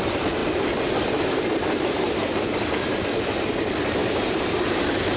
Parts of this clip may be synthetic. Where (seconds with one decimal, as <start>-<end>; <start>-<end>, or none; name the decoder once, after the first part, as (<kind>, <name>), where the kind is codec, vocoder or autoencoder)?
0.4-1.8 (vocoder, BigVGAN v2); 4.0-4.7